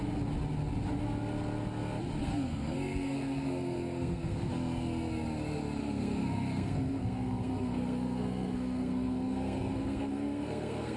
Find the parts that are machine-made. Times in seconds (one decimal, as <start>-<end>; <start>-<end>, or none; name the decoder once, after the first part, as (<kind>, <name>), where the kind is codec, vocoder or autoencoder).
2.2-4.4 (codec, SNAC); 5.8-11.0